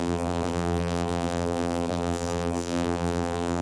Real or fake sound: fake